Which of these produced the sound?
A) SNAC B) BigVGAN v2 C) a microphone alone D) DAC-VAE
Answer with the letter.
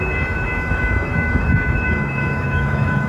D